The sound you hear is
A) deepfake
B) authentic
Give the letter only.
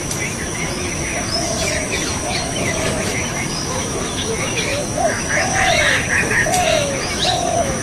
A